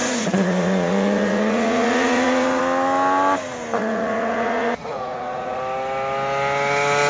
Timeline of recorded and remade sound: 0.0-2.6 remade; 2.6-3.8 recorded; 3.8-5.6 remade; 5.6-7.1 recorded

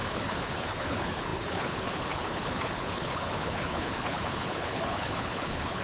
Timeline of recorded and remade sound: 0.0-5.8 remade